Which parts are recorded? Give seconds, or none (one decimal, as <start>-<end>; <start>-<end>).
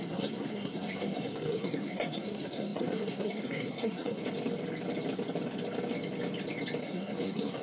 4.2-6.8